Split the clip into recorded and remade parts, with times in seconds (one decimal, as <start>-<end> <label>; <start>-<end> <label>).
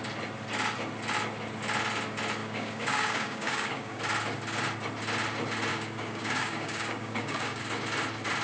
0.0-2.4 recorded; 2.4-4.0 remade; 4.0-5.7 recorded; 5.7-7.6 remade; 7.6-8.4 recorded